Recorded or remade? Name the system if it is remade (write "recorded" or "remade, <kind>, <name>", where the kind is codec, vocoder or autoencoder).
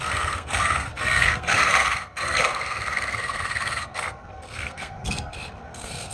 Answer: remade, codec, SNAC